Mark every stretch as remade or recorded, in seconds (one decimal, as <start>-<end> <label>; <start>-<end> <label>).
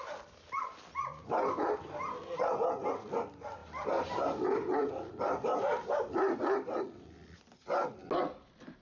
0.0-3.6 recorded; 3.6-5.9 remade; 5.9-8.8 recorded